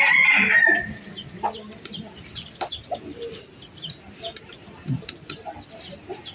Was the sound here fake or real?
real